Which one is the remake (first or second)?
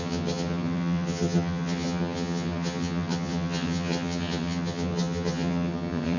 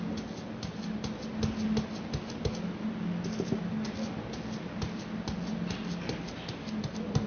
first